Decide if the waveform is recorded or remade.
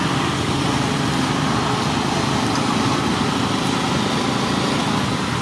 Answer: recorded